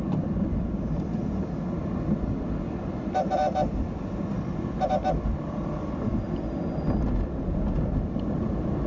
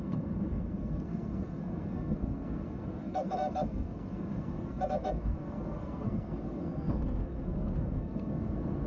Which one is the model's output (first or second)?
second